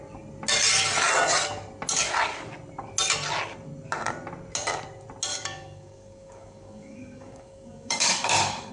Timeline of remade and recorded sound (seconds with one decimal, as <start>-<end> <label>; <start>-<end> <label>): 0.0-5.3 recorded; 5.3-8.7 remade

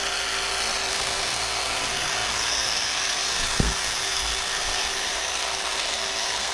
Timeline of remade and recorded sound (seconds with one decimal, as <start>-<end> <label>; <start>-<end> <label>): 0.0-0.9 recorded; 0.9-6.5 remade

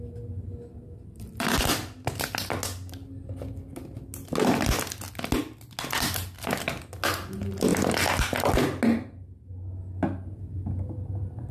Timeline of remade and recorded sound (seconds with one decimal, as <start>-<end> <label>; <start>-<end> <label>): 0.0-11.5 recorded

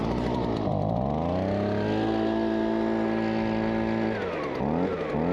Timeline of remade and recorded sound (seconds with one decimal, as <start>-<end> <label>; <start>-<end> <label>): 0.0-5.3 recorded

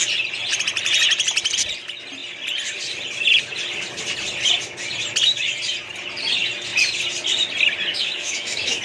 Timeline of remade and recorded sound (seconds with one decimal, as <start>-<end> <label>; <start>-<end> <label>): 0.0-7.9 recorded; 7.9-8.8 remade

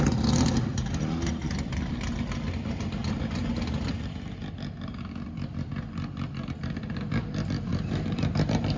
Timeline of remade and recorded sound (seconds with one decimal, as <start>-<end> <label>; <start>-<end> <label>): 0.0-0.7 recorded; 0.7-1.5 remade; 1.5-3.0 recorded; 3.0-4.0 remade; 4.0-7.7 recorded; 7.7-8.8 remade

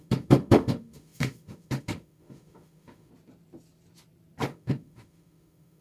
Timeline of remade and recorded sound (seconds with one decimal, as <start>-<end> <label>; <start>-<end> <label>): 0.0-3.1 remade; 3.1-4.5 recorded; 4.5-5.8 remade